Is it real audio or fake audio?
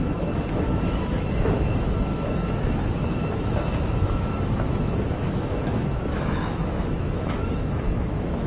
fake